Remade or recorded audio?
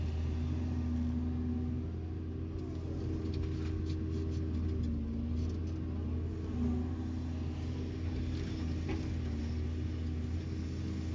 recorded